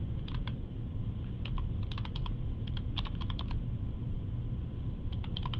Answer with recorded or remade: recorded